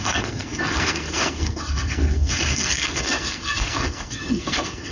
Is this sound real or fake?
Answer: fake